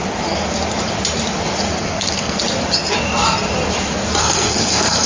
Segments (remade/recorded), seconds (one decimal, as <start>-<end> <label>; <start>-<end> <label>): 0.0-1.8 recorded; 1.8-2.4 remade; 2.4-4.2 recorded; 4.2-5.1 remade